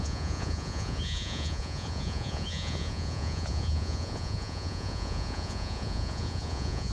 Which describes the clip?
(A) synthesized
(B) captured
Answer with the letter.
A